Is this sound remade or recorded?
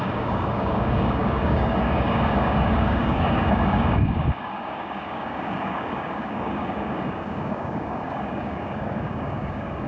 remade